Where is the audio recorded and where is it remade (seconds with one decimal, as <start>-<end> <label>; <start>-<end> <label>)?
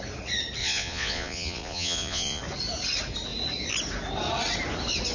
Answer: 0.0-0.6 recorded; 0.6-2.4 remade; 2.4-5.1 recorded